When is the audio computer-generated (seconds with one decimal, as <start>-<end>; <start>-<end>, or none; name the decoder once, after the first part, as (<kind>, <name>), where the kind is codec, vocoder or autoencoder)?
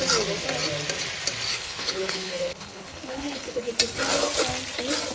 1.5-3.7 (codec, HILCodec)